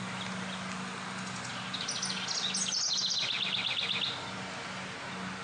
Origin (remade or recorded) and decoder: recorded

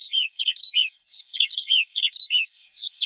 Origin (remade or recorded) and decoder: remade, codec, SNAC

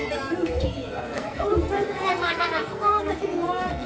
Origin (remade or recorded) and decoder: remade, codec, SNAC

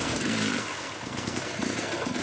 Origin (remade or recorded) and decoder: remade, codec, SNAC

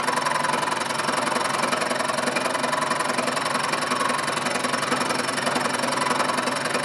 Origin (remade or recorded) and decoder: recorded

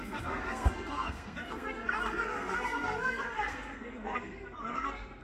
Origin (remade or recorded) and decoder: remade, codec, SNAC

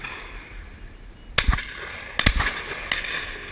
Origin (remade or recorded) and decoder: recorded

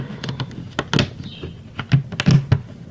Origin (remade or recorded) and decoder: recorded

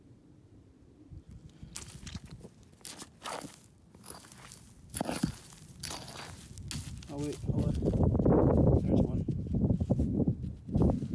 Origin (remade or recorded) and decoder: recorded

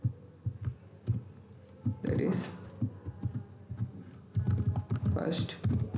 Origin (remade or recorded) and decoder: recorded